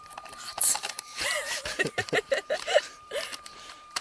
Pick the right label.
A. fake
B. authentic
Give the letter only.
A